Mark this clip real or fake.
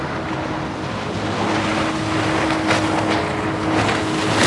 real